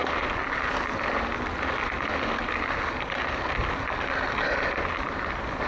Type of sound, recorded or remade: recorded